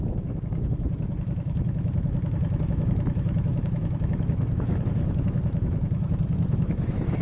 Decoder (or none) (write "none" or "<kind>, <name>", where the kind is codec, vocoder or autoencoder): autoencoder, DAC-VAE